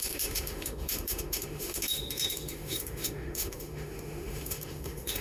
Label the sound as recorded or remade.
remade